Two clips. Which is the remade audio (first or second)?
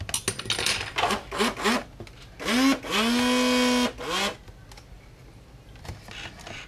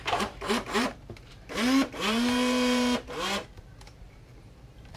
second